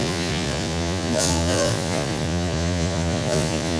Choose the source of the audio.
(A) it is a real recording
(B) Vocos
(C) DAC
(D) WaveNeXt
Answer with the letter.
B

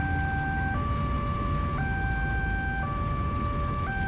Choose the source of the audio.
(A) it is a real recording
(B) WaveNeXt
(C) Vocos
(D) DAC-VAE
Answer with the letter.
A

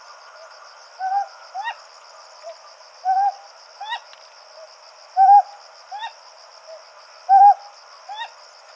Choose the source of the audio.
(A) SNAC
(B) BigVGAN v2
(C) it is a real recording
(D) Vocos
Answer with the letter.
C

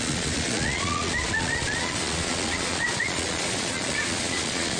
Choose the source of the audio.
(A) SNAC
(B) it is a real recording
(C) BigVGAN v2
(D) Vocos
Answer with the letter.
D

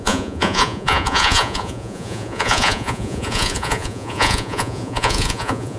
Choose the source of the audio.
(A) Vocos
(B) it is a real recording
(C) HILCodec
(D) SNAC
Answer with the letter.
A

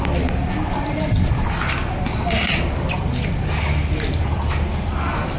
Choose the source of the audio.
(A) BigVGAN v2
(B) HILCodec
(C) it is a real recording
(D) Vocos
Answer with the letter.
C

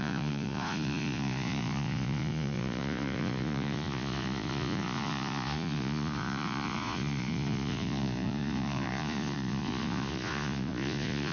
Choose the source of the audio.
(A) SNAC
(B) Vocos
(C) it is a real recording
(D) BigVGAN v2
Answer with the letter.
B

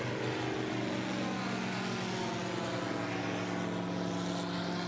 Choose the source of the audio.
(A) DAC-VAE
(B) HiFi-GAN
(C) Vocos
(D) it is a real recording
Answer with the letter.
D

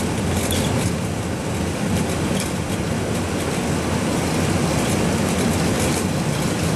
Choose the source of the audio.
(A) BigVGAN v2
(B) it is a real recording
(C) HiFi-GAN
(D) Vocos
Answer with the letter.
B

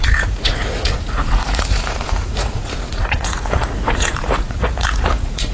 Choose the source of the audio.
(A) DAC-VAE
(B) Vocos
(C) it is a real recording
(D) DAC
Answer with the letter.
B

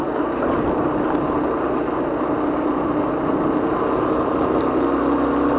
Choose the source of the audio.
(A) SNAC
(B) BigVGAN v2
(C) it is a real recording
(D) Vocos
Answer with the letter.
C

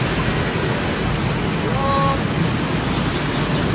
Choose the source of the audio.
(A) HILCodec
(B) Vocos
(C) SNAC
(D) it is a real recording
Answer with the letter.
D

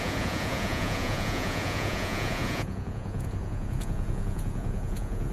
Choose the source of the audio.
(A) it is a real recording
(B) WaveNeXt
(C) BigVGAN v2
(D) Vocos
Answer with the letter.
D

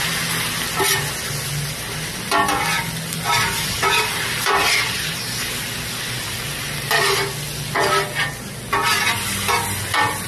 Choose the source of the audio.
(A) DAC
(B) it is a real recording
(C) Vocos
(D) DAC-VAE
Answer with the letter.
B